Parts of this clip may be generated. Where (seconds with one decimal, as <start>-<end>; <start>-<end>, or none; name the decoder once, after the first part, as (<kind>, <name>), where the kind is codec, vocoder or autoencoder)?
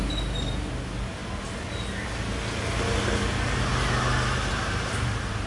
none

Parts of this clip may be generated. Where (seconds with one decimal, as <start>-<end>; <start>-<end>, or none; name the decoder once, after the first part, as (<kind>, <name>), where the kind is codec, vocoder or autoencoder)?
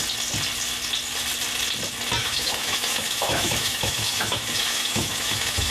2.2-5.7 (autoencoder, DAC-VAE)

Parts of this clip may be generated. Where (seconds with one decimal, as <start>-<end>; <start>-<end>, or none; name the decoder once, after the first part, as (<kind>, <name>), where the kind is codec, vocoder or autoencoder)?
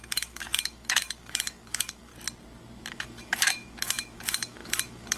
0.0-2.1 (autoencoder, DAC-VAE); 2.9-5.2